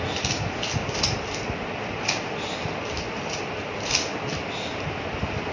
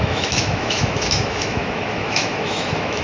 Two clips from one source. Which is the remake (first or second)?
second